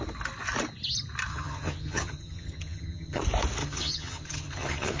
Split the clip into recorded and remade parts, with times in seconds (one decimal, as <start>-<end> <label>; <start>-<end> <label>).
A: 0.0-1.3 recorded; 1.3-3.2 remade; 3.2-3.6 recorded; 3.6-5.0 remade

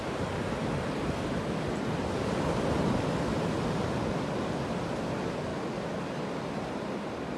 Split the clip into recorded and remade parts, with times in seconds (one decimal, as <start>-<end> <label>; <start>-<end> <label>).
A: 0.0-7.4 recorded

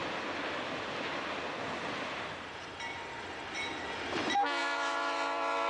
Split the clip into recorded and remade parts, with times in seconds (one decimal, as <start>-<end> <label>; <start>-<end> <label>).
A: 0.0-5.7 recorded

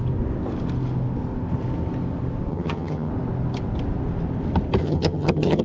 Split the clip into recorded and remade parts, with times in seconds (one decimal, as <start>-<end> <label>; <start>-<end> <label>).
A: 0.0-2.5 recorded; 2.5-3.1 remade; 3.1-4.8 recorded; 4.8-5.6 remade

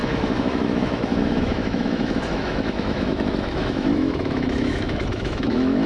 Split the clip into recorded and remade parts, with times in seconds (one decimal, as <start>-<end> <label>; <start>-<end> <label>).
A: 0.0-5.9 remade